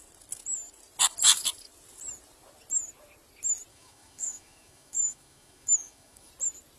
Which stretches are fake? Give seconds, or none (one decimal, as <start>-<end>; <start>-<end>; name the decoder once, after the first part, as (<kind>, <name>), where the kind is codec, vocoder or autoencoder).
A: 3.7-6.3 (autoencoder, DAC-VAE)